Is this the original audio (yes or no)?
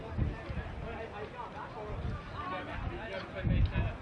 yes